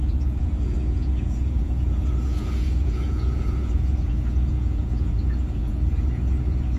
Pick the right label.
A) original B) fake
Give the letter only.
B